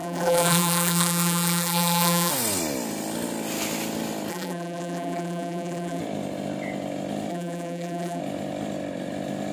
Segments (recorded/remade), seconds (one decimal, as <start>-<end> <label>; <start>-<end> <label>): 0.0-2.3 remade; 2.3-4.3 recorded; 4.3-6.0 remade; 6.0-7.3 recorded; 7.3-8.2 remade; 8.2-9.5 recorded